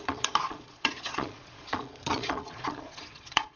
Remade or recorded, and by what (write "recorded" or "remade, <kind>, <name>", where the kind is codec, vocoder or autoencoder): remade, vocoder, Vocos